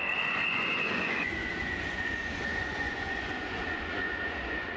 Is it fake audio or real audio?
fake